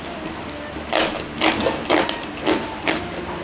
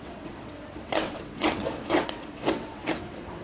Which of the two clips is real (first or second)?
first